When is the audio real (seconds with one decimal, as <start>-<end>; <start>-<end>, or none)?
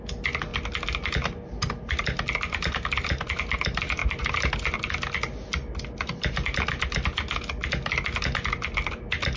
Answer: 0.0-9.4